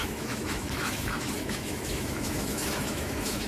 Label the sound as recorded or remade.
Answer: remade